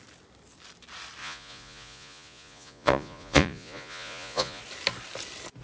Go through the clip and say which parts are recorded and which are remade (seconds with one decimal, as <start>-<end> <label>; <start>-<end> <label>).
0.0-1.2 recorded; 1.2-4.6 remade; 4.6-5.6 recorded